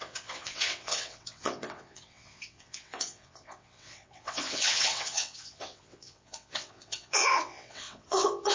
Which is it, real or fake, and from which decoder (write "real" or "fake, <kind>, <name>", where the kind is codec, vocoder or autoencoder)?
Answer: fake, vocoder, WaveNeXt